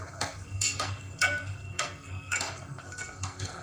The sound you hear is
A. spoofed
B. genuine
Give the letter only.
A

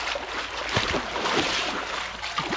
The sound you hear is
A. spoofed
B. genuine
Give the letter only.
B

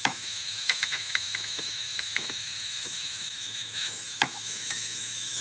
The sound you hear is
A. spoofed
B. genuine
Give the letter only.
A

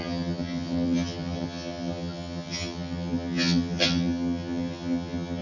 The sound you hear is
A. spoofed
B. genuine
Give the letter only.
A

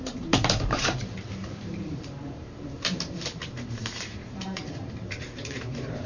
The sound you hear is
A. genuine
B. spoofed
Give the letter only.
B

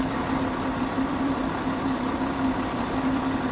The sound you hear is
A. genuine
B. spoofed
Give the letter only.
B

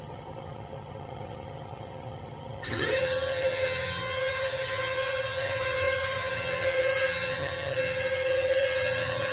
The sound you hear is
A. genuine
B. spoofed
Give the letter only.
B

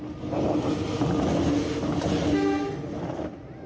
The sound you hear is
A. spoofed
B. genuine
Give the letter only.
B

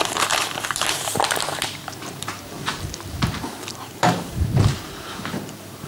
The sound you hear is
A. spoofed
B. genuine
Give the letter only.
A